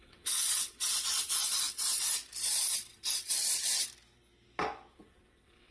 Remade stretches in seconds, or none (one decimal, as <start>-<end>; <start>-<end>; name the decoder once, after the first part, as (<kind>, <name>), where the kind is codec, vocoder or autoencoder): 0.0-2.0 (vocoder, WaveNeXt); 2.6-3.8; 4.9-5.7